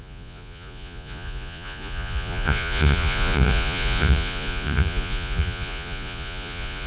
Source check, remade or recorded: remade